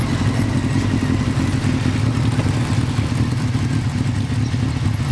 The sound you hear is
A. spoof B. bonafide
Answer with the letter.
B